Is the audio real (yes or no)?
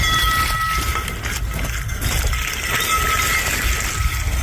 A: yes